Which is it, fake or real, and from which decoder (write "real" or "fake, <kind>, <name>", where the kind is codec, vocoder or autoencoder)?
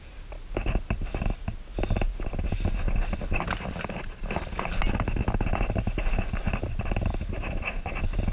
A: real